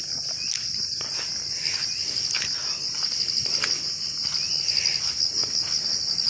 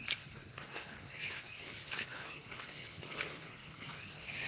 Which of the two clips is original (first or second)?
first